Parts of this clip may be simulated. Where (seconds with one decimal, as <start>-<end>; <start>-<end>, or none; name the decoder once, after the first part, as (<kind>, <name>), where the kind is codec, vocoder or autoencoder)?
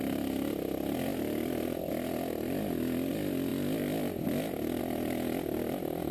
none